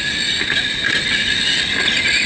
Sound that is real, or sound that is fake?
real